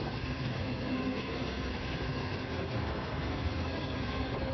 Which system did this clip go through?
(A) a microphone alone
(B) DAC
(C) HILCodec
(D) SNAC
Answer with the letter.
D